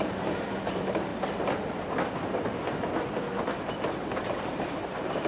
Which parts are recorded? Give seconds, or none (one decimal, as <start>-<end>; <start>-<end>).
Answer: 1.1-4.3